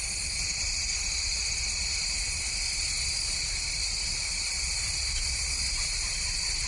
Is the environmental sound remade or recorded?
recorded